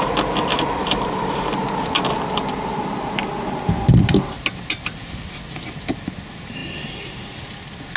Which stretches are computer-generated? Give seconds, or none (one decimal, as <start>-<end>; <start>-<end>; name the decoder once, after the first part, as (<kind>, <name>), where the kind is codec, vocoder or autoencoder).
0.8-1.6 (vocoder, BigVGAN v2)